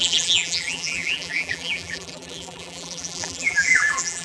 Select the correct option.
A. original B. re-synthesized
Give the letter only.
B